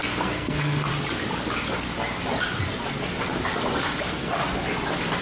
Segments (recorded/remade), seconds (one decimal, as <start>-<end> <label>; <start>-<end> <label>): 0.0-0.9 remade; 0.9-4.0 recorded; 4.0-4.4 remade; 4.4-5.2 recorded